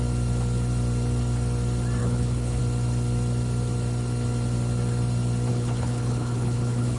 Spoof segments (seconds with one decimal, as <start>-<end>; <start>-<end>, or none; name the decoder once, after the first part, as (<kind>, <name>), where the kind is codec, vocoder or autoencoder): 2.0-2.6 (codec, HILCodec); 5.5-7.0